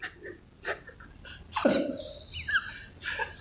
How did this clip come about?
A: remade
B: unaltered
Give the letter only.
B